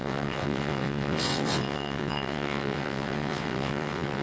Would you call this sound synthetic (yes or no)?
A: yes